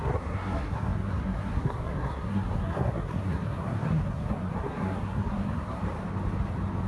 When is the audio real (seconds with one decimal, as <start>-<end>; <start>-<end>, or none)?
5.8-6.9